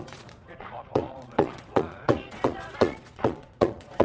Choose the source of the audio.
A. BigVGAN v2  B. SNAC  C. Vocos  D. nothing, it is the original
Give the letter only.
C